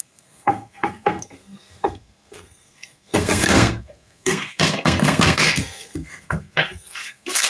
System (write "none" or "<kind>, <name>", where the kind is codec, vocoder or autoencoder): codec, SNAC